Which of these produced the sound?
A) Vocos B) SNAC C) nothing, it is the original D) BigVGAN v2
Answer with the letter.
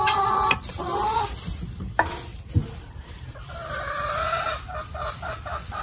D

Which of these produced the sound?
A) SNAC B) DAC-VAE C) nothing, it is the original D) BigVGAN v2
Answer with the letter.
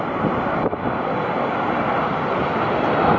C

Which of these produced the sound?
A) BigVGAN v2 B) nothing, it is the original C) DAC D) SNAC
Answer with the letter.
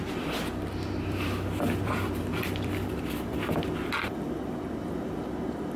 A